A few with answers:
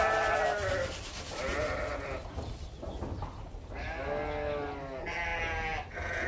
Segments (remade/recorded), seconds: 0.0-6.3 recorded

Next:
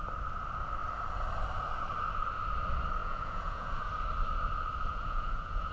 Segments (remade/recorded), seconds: 0.0-3.0 recorded; 3.0-3.9 remade; 3.9-4.9 recorded; 4.9-5.7 remade

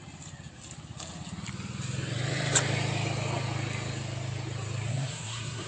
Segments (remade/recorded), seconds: 0.0-4.9 recorded; 4.9-5.7 remade

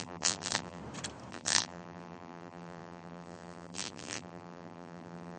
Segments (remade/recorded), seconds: 0.0-0.8 remade; 0.8-1.3 recorded; 1.3-5.4 remade

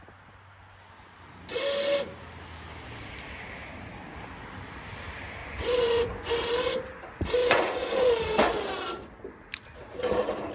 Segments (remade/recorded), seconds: 0.0-5.4 recorded; 5.4-6.3 remade; 6.3-7.4 recorded; 7.4-8.1 remade; 8.1-10.5 recorded

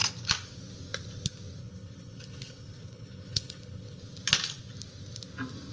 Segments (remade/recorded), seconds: 0.0-1.6 recorded; 1.6-4.0 remade; 4.0-5.7 recorded